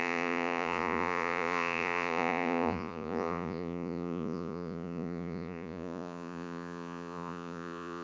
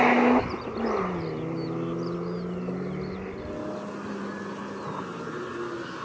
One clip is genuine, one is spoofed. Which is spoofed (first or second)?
first